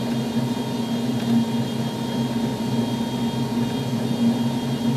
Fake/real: real